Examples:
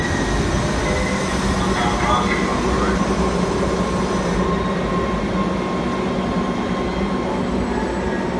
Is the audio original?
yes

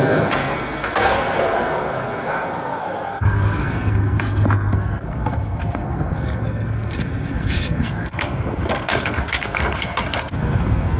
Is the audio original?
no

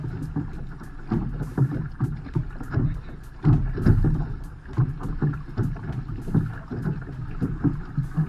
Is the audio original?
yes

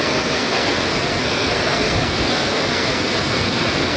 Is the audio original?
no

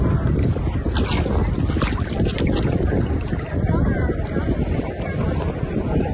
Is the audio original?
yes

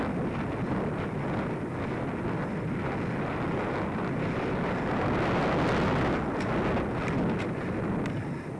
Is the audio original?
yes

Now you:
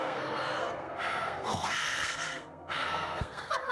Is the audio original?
no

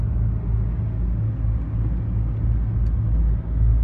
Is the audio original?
yes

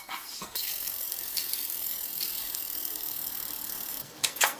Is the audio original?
no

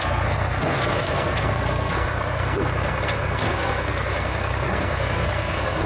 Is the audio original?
no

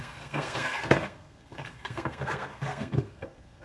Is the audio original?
no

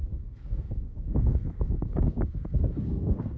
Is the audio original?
no